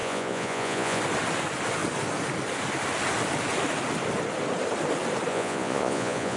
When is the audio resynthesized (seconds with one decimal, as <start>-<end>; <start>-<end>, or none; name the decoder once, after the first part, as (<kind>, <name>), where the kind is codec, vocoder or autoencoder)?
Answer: 0.0-1.0 (vocoder, Vocos); 5.3-6.4